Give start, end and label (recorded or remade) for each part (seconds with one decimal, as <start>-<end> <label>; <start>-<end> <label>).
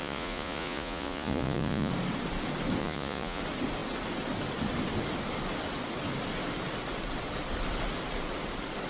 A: 0.0-1.9 remade; 1.9-2.8 recorded; 2.8-3.4 remade; 3.4-8.9 recorded